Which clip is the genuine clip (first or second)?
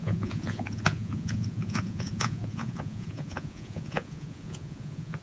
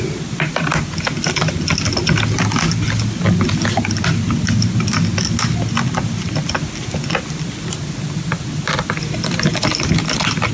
second